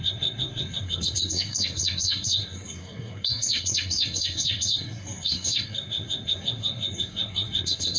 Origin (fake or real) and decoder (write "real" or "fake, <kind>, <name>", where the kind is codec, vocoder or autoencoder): fake, codec, SNAC